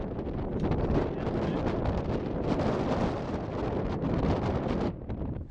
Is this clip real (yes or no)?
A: yes